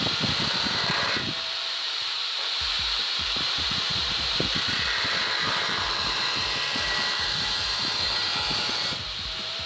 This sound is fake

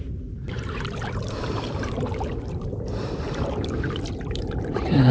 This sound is fake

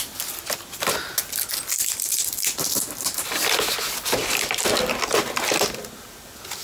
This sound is real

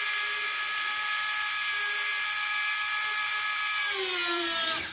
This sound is fake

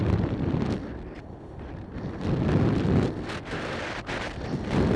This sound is fake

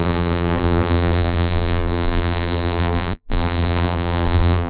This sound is fake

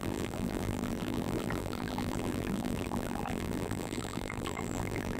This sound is fake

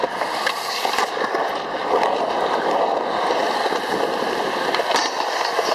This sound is fake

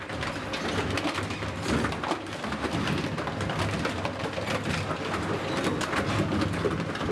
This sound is real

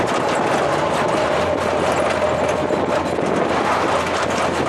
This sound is real